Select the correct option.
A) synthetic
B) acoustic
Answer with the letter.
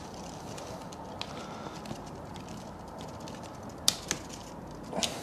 B